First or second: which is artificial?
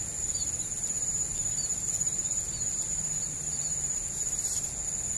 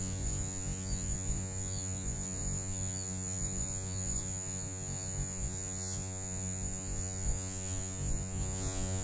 second